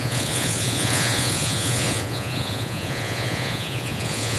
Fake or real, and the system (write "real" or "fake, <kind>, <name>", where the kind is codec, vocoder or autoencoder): fake, vocoder, Vocos